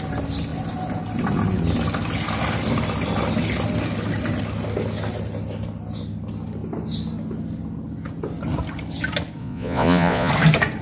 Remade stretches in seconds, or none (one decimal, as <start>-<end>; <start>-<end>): 9.4-10.3